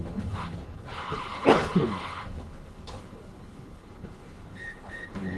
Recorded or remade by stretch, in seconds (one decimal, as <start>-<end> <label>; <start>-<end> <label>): 0.0-5.4 remade